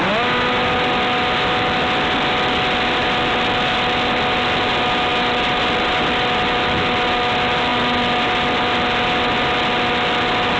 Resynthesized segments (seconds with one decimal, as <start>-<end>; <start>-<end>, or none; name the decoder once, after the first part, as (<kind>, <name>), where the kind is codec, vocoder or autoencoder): none